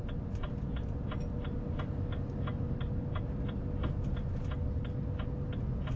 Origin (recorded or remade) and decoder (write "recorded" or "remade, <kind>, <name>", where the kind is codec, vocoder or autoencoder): recorded